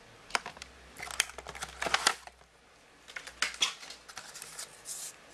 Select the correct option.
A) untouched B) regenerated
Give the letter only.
A